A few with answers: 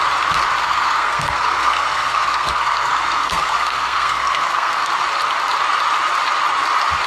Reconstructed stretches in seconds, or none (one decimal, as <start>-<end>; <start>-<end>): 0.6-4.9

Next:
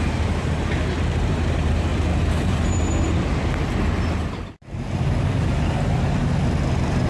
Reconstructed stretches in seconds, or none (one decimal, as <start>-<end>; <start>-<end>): none

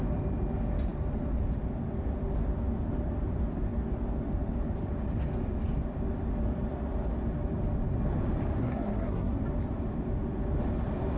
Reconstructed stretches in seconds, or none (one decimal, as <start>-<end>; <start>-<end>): 8.6-9.4

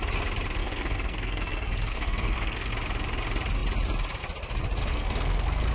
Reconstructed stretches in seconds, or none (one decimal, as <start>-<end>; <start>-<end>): 0.6-2.7; 4.8-5.7

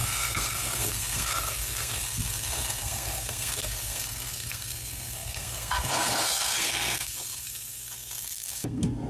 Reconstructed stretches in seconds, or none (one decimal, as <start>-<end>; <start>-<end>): 0.0-9.1

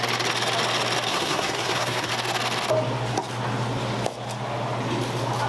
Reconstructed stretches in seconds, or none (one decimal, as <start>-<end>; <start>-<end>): 1.1-2.1

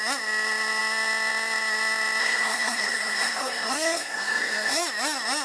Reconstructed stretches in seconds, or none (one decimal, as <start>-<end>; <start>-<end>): 2.2-4.8

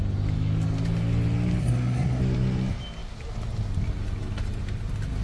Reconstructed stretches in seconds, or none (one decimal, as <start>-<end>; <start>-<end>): 1.6-2.2